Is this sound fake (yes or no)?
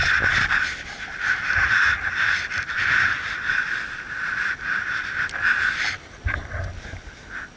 no